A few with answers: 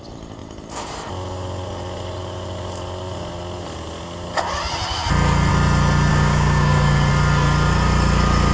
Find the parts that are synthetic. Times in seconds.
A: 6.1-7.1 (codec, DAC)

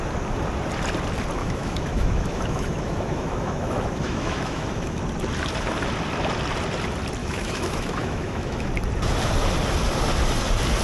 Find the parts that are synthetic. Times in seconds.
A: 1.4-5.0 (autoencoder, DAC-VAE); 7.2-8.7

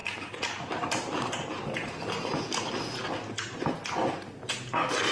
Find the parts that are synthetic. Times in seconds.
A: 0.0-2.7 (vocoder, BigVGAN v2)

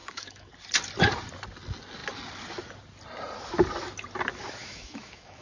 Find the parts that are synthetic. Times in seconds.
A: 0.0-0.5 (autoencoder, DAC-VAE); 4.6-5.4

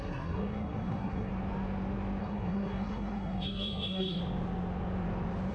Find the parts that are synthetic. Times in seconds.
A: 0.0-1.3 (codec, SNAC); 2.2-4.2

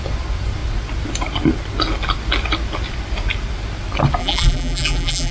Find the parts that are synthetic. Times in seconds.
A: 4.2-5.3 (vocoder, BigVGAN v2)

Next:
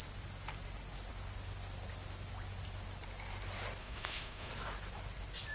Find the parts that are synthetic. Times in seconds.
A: 3.8-4.5 (autoencoder, DAC-VAE)